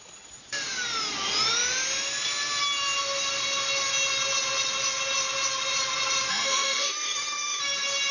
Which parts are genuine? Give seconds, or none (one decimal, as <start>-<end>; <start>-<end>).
0.0-6.3; 7.6-8.1